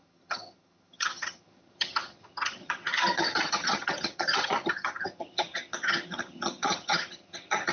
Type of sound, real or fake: fake